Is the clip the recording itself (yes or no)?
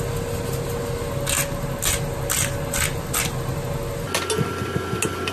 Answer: yes